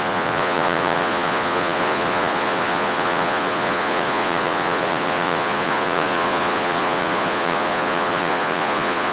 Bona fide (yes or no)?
no